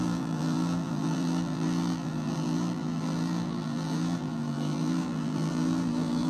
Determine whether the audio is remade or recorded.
remade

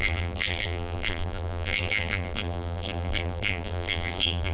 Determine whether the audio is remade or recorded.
remade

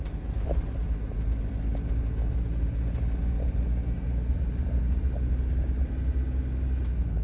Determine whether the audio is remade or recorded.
recorded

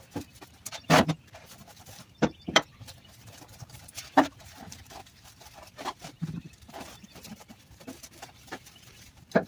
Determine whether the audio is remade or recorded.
remade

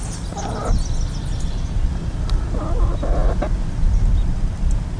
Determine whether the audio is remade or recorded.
recorded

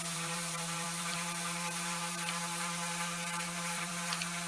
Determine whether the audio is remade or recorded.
remade